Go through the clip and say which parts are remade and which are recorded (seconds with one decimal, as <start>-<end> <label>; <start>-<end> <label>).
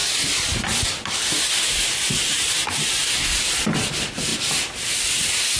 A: 0.0-5.6 recorded